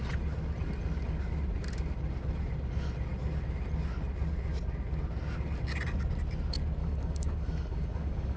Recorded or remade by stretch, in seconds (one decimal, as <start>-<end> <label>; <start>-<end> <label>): 0.0-6.8 recorded; 6.8-8.4 remade